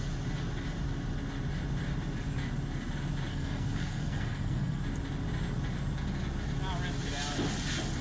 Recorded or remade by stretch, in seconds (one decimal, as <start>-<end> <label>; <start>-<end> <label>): 0.0-3.3 recorded; 3.3-4.8 remade; 4.8-8.0 recorded